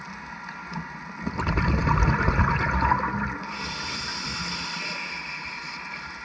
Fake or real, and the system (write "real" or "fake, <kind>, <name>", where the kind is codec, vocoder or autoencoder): real